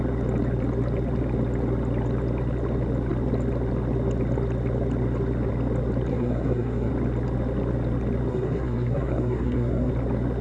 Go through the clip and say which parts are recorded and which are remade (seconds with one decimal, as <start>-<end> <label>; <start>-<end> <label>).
0.0-6.1 recorded; 6.1-6.9 remade; 6.9-8.3 recorded; 8.3-9.9 remade; 9.9-10.4 recorded